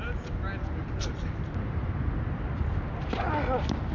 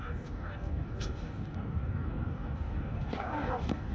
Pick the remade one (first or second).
second